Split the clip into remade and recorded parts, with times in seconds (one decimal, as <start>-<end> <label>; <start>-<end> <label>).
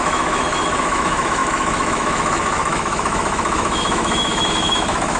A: 0.0-5.2 remade